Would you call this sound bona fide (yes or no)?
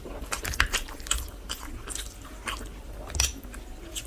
no